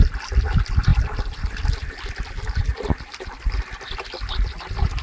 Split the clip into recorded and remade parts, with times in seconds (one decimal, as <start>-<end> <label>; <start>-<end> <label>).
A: 0.0-2.7 recorded; 2.7-4.2 remade; 4.2-5.0 recorded